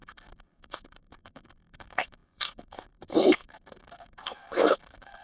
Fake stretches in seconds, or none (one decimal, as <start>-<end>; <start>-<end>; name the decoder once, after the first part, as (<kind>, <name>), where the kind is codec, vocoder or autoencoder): 0.0-5.2 (codec, SNAC)